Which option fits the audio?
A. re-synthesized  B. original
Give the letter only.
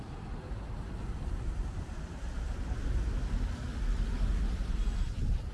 B